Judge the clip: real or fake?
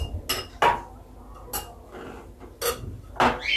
real